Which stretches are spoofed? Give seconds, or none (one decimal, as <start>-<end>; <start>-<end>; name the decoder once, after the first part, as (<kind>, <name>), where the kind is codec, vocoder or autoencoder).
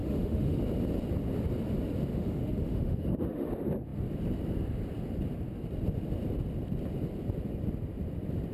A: 0.0-0.6 (autoencoder, DAC-VAE); 2.1-3.5